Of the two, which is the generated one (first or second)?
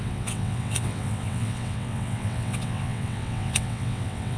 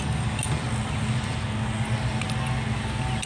first